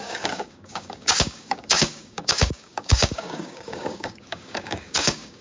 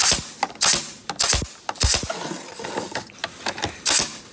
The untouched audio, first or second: second